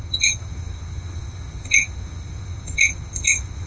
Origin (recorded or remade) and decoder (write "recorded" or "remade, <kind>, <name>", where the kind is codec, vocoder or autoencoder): remade, vocoder, HiFi-GAN